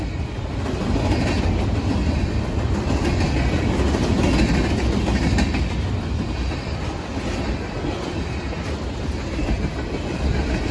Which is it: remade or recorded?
recorded